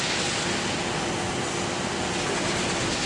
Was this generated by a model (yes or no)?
no